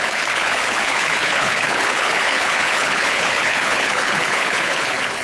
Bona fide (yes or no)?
no